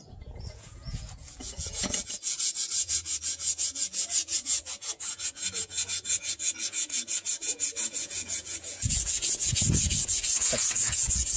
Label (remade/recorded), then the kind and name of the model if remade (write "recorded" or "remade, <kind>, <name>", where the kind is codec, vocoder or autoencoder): remade, vocoder, Vocos